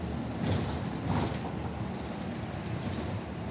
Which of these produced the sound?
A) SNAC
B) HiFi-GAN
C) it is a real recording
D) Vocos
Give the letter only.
C